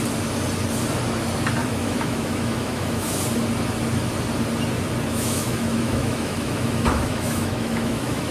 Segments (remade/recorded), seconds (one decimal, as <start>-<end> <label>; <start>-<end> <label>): 0.0-1.6 recorded; 1.6-3.2 remade; 3.2-5.1 recorded; 5.1-8.3 remade